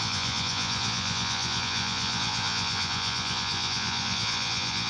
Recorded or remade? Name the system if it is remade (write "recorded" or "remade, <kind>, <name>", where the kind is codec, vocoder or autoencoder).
remade, vocoder, Vocos